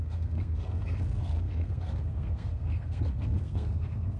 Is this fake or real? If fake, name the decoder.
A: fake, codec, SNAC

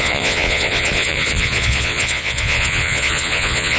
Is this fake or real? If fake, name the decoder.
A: fake, vocoder, Vocos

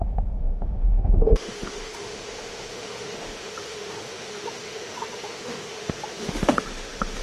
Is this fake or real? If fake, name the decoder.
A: fake, autoencoder, DAC-VAE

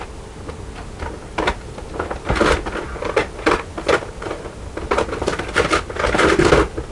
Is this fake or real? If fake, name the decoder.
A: real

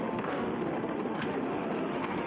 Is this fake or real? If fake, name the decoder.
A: fake, autoencoder, DAC-VAE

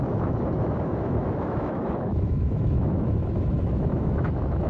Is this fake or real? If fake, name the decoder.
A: fake, autoencoder, DAC-VAE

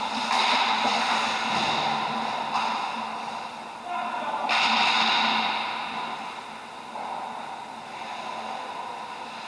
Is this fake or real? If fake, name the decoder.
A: real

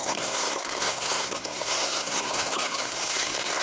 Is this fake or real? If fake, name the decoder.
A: fake, codec, SNAC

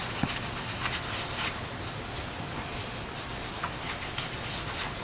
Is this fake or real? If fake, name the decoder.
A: real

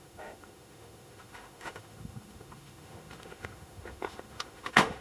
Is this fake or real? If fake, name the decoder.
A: fake, autoencoder, DAC-VAE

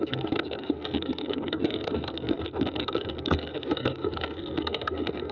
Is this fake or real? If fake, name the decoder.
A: fake, codec, SNAC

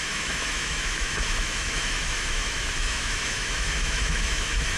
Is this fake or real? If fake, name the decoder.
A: fake, autoencoder, DAC-VAE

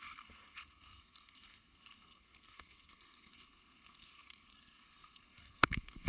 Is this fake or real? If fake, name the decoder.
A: fake, codec, SNAC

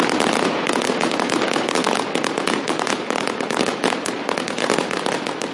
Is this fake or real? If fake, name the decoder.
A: real